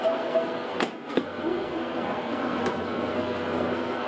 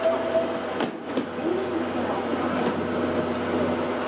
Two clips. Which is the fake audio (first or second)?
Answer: first